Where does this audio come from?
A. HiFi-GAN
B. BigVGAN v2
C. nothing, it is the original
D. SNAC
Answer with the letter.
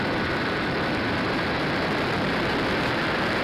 B